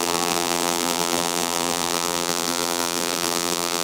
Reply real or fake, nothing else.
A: fake